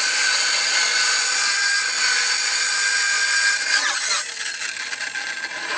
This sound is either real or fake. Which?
real